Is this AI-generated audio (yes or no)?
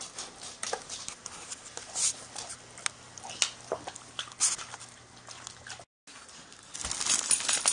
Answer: no